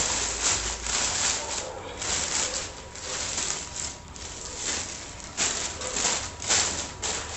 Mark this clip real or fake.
real